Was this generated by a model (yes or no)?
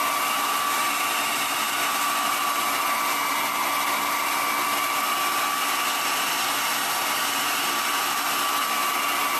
no